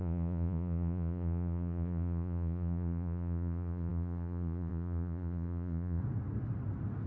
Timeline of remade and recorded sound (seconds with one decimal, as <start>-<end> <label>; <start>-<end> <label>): 0.0-6.0 remade; 6.0-7.1 recorded